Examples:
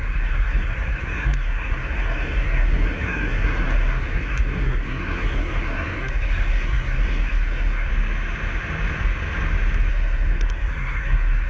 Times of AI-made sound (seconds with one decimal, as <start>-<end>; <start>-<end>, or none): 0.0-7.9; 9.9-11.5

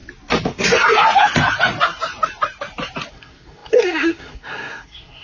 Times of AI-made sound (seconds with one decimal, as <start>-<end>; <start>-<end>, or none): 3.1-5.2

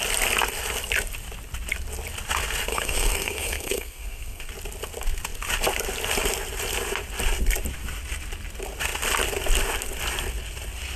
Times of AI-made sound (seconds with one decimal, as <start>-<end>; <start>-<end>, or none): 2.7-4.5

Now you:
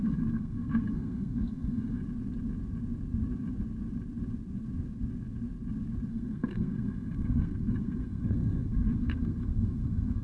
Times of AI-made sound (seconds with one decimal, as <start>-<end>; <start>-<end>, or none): 0.0-2.0; 6.1-10.2

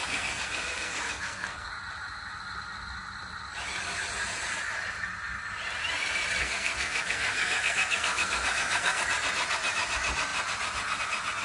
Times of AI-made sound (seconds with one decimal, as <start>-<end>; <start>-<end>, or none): 0.0-1.7; 6.4-9.0

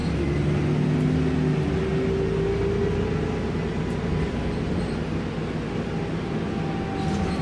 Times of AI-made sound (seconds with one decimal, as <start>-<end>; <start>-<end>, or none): none

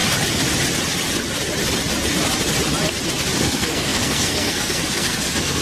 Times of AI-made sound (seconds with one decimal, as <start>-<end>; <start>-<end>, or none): 3.4-5.6

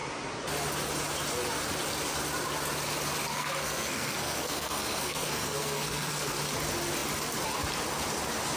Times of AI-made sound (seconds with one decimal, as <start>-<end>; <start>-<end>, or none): 3.3-6.4